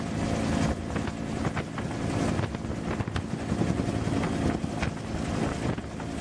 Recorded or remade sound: recorded